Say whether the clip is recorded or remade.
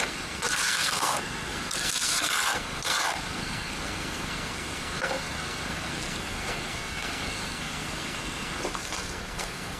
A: remade